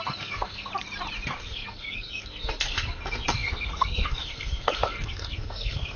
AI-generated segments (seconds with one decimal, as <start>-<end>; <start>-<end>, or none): 0.0-0.7; 1.3-6.0